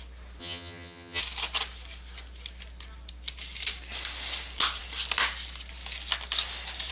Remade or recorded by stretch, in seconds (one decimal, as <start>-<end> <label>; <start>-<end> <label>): 0.0-0.4 recorded; 0.4-1.2 remade; 1.2-6.9 recorded